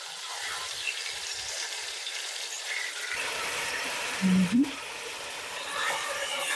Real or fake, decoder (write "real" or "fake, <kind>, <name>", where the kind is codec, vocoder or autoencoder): fake, vocoder, BigVGAN v2